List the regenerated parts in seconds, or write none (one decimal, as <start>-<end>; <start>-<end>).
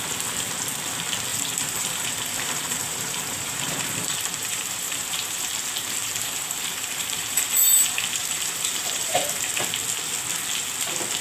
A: 1.3-5.5; 6.0-7.4; 8.2-9.4